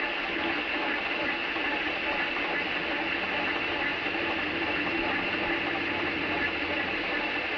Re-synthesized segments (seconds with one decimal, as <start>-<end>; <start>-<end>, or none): 1.4-2.5; 3.9-7.6

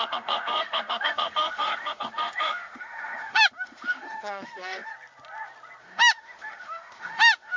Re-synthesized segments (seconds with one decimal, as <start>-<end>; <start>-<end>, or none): 0.0-4.9; 5.8-7.6

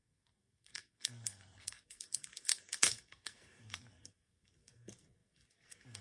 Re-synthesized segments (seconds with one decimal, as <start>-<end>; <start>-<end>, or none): 0.0-6.0

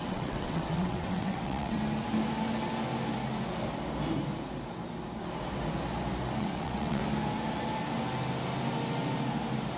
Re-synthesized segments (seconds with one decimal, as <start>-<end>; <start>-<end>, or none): 0.0-1.8; 6.4-7.0

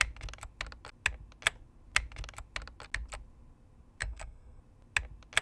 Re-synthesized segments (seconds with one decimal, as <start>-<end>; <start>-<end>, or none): 4.0-4.6

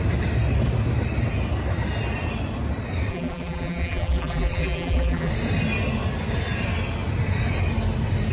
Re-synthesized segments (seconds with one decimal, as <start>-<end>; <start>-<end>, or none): 3.1-5.3

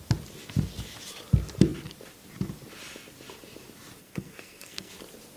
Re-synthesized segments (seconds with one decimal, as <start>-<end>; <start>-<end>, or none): 4.0-4.9

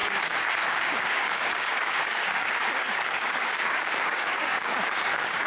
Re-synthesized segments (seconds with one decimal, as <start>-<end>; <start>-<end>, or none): 0.0-5.5